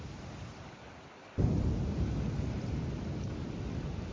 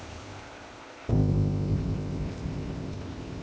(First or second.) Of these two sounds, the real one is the first